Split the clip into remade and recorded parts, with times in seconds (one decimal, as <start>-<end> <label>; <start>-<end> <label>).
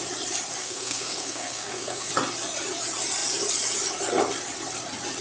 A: 0.0-0.6 recorded; 0.6-2.1 remade; 2.1-5.2 recorded